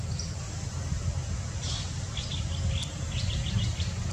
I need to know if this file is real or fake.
real